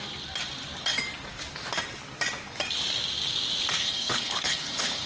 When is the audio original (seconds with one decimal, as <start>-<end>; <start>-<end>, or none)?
0.0-3.8